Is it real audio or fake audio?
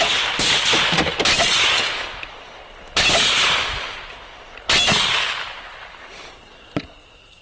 real